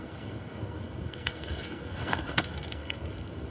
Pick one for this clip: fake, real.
fake